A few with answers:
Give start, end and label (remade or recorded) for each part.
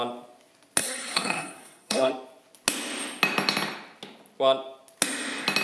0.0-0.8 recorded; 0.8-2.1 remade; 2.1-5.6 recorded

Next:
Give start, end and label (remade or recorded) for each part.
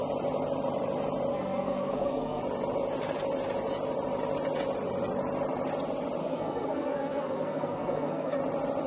0.0-1.3 recorded; 1.3-2.4 remade; 2.4-6.2 recorded; 6.2-8.4 remade; 8.4-8.9 recorded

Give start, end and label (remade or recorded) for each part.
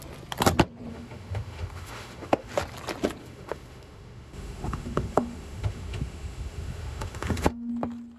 0.0-0.9 recorded; 0.9-2.5 remade; 2.5-3.2 recorded; 3.2-7.7 remade; 7.7-8.2 recorded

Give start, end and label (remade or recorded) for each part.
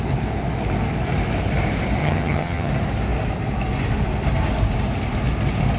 0.0-2.0 recorded; 2.0-2.7 remade; 2.7-5.8 recorded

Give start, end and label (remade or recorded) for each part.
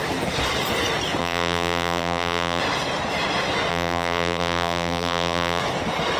0.0-1.2 recorded; 1.2-2.6 remade; 2.6-3.7 recorded; 3.7-5.6 remade; 5.6-6.2 recorded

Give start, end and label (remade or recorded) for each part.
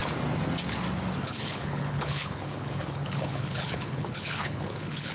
0.0-1.2 recorded; 1.2-5.1 remade